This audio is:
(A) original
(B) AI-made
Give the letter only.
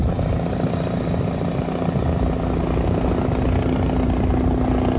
A